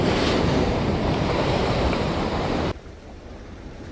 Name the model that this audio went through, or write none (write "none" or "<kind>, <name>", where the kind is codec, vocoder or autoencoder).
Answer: vocoder, BigVGAN v2